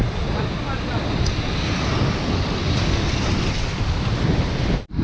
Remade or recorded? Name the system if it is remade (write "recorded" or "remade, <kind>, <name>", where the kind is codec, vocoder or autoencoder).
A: recorded